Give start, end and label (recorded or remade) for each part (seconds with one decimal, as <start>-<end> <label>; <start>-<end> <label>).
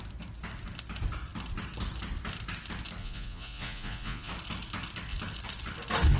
0.0-3.0 recorded; 3.0-4.3 remade; 4.3-6.2 recorded